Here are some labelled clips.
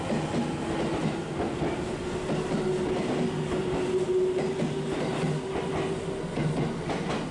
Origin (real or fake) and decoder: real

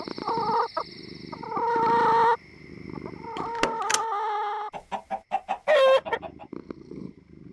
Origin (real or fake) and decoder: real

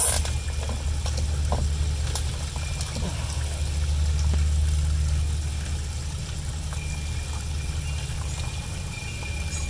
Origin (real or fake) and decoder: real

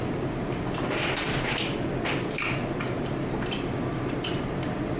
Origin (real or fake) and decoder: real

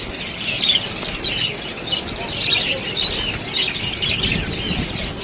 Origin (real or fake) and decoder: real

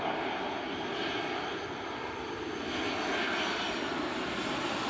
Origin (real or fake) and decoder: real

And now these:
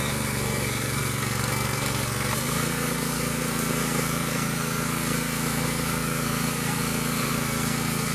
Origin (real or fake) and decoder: fake, codec, SNAC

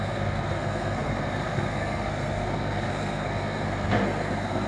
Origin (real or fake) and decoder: fake, codec, SNAC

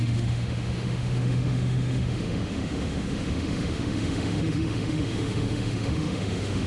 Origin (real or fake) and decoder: fake, autoencoder, DAC-VAE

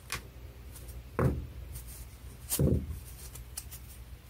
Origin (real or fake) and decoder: real